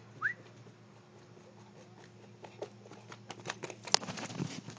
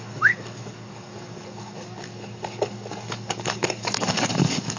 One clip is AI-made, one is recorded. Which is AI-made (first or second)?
second